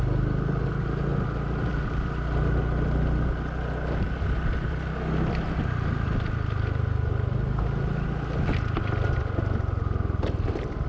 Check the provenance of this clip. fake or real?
real